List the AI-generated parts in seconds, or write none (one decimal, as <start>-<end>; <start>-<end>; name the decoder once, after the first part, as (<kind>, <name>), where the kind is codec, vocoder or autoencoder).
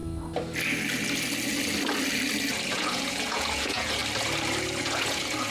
2.7-4.0 (vocoder, Vocos); 4.8-5.5